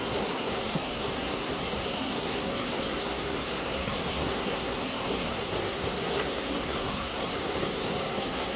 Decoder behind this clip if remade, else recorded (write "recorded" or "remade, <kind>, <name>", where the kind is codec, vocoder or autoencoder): remade, codec, SNAC